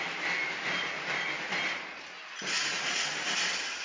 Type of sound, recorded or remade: recorded